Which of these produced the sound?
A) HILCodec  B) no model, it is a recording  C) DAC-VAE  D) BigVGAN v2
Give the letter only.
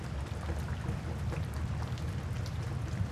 B